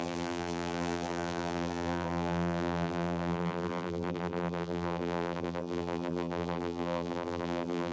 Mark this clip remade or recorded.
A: remade